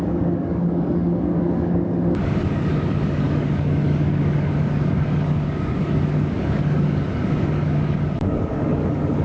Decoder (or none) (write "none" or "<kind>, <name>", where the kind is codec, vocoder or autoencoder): codec, DAC